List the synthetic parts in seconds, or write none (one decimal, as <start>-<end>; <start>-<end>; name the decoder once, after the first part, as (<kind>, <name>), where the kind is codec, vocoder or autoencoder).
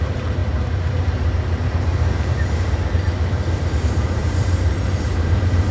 0.0-0.4 (vocoder, BigVGAN v2); 3.8-5.7